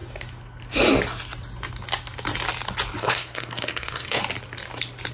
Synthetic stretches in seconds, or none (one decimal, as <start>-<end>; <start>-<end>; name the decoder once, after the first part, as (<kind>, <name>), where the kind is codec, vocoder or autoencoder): 3.0-4.2 (codec, SNAC)